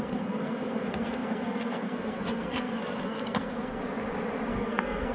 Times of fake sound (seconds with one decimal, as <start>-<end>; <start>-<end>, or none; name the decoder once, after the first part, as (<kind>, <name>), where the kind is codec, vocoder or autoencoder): 0.0-3.8 (codec, SNAC); 4.5-5.1